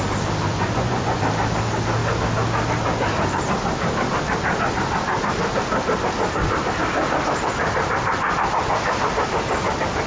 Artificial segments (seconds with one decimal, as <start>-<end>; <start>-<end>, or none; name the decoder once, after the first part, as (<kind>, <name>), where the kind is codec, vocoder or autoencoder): 0.5-1.2 (vocoder, Vocos)